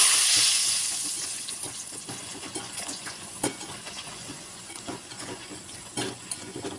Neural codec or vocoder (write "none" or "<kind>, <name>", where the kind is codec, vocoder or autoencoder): vocoder, Vocos